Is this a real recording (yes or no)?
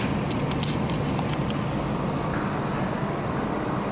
yes